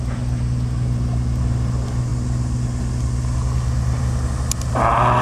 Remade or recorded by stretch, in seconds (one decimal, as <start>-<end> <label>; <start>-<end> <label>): 0.0-5.2 recorded